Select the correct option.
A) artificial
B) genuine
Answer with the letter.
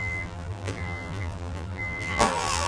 A